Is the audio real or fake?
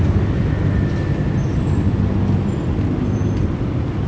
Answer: real